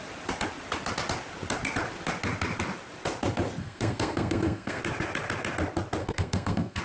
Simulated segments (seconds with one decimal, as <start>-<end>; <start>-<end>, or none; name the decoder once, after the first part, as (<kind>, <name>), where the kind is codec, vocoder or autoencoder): 3.6-4.8 (codec, SNAC); 6.0-6.8